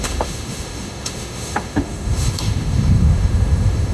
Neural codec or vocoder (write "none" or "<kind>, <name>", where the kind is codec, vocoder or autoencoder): autoencoder, DAC-VAE